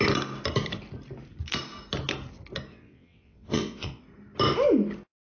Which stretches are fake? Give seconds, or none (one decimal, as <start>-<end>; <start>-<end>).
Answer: 2.7-4.0